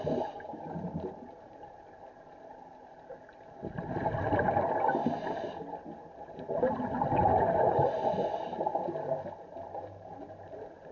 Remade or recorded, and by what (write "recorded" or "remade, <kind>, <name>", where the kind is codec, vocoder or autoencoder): recorded